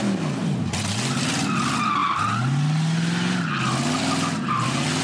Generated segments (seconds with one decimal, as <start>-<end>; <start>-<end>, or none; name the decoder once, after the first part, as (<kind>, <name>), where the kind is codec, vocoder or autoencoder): none